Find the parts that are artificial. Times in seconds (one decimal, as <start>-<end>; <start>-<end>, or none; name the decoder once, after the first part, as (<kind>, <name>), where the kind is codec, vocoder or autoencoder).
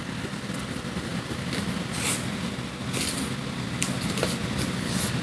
none